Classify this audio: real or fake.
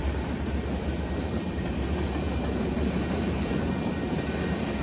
fake